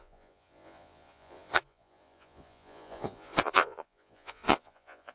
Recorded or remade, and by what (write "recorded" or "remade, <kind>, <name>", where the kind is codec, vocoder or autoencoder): remade, vocoder, Vocos